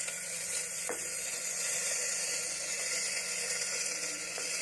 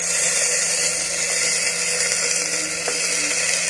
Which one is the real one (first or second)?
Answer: second